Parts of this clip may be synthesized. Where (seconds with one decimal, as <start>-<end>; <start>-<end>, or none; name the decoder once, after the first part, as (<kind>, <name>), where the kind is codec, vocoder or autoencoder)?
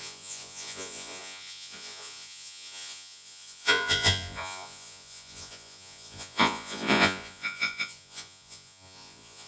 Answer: 0.0-9.5 (vocoder, Vocos)